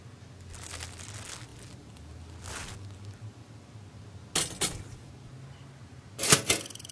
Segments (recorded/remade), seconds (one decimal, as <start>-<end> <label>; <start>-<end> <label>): 0.0-6.9 recorded

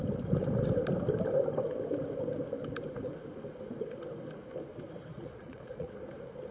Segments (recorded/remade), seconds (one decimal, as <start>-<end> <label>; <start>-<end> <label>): 0.0-5.1 recorded; 5.1-5.9 remade; 5.9-6.5 recorded